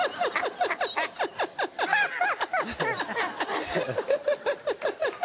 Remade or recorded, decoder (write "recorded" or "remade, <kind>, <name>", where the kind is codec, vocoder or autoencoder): recorded